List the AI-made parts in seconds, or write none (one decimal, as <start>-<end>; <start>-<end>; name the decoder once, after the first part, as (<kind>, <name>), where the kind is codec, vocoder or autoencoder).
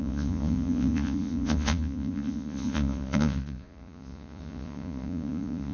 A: 0.0-5.7 (vocoder, Vocos)